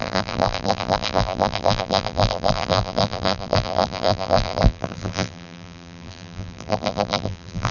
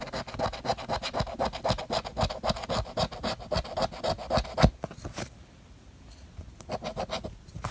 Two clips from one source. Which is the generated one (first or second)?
first